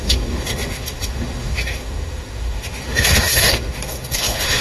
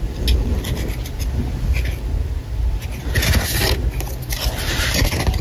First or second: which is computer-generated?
first